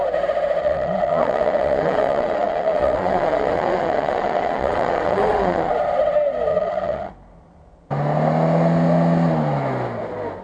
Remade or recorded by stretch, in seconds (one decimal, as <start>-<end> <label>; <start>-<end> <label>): 0.0-0.6 recorded; 0.6-5.7 remade; 5.7-6.5 recorded; 6.5-7.1 remade; 7.1-10.4 recorded